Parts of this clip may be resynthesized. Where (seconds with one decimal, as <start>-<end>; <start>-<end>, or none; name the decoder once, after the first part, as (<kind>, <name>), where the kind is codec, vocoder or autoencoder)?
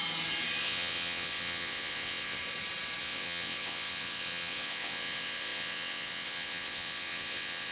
0.6-2.4 (vocoder, WaveNeXt); 3.0-7.7